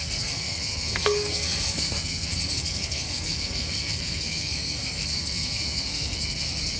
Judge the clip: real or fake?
fake